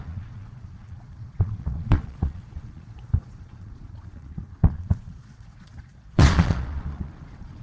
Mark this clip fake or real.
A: fake